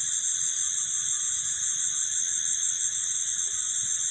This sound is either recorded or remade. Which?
recorded